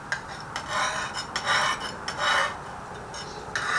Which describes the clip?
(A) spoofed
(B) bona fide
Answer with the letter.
B